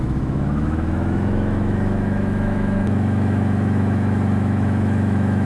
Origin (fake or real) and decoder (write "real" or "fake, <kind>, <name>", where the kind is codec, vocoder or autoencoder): fake, autoencoder, DAC-VAE